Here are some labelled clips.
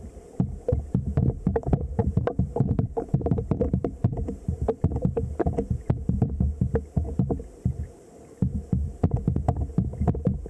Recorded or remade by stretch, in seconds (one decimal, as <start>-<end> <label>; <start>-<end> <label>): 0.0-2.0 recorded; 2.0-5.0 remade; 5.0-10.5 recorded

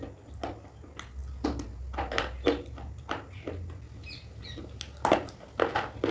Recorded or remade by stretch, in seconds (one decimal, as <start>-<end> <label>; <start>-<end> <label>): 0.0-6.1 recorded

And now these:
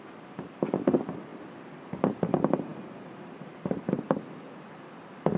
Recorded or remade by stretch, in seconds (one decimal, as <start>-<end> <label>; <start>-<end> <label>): 0.0-5.4 recorded

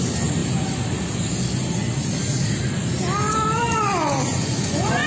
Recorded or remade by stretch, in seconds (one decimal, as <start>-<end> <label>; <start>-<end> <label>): 0.0-4.3 recorded; 4.3-5.1 remade